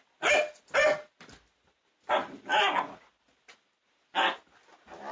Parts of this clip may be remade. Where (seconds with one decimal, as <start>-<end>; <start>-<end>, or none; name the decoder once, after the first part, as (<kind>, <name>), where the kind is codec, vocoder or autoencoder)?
none